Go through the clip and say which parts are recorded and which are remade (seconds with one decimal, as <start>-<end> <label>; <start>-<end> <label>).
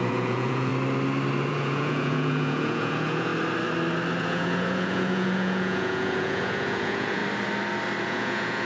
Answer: 0.0-0.7 remade; 0.7-1.5 recorded; 1.5-3.3 remade; 3.3-4.2 recorded; 4.2-7.2 remade; 7.2-8.0 recorded; 8.0-8.6 remade